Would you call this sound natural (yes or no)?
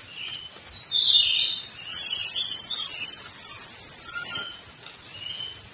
yes